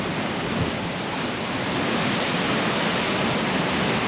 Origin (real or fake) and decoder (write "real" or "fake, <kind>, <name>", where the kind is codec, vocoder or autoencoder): real